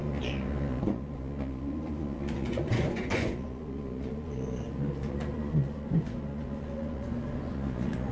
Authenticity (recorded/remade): remade